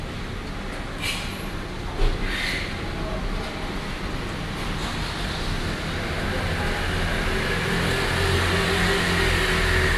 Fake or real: real